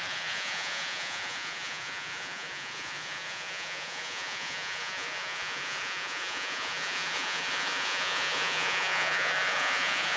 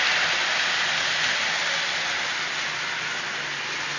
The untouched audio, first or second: second